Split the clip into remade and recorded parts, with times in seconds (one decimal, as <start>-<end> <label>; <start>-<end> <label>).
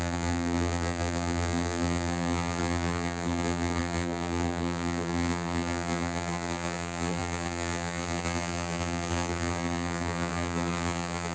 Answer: 0.0-11.3 remade